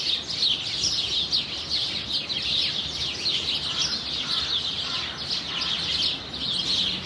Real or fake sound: real